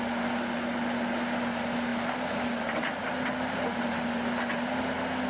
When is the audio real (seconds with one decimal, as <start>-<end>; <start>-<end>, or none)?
0.0-5.3